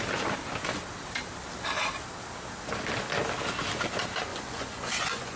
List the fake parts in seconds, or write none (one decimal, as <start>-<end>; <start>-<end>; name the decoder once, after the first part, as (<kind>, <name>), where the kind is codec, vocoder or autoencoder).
4.3-5.4 (vocoder, Vocos)